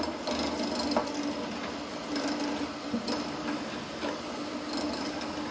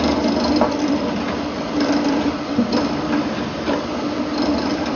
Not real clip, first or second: second